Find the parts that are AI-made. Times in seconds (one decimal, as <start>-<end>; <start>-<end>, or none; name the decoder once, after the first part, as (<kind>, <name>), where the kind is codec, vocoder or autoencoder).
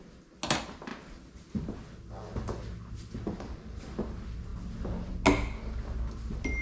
none